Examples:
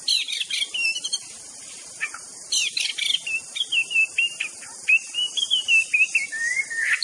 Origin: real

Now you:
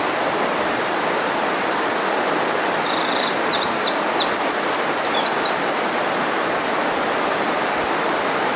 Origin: real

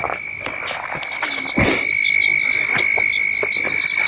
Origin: real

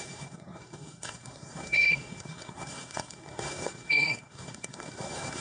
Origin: fake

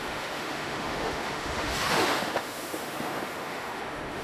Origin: fake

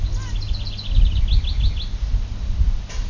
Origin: real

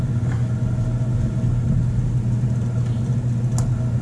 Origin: real